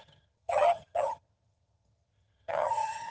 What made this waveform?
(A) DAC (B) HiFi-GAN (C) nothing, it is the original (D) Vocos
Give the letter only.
B